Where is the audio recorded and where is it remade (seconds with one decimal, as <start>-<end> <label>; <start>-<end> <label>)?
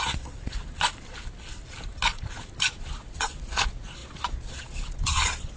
0.0-0.9 remade; 0.9-2.8 recorded; 2.8-5.6 remade